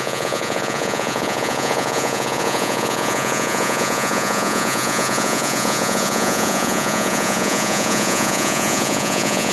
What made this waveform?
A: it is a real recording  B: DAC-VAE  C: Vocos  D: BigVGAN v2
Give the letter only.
C